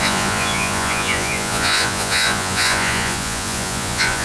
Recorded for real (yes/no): no